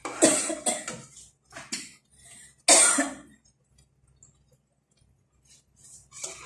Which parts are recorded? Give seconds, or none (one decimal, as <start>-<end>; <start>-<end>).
0.0-6.5

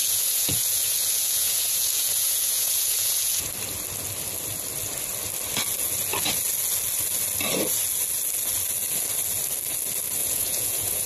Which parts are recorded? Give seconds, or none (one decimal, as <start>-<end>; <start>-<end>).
3.5-10.2

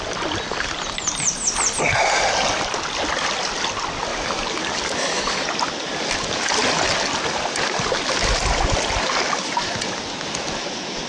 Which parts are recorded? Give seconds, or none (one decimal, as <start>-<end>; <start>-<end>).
0.0-11.1